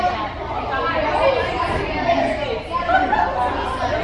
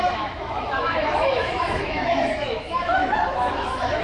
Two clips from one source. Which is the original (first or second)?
first